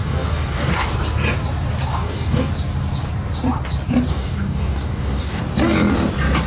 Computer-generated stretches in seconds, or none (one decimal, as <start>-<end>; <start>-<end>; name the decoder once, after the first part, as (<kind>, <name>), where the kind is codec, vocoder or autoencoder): 0.0-0.9 (codec, DAC); 1.9-2.5; 4.1-5.4